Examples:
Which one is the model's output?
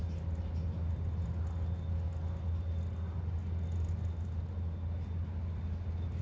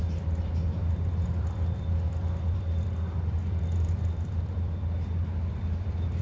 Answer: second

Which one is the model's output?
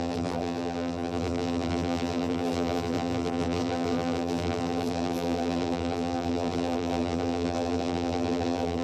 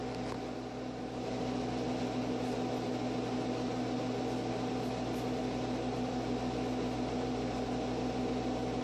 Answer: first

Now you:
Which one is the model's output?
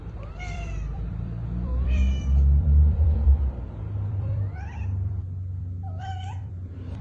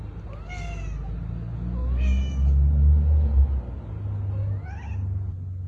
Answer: first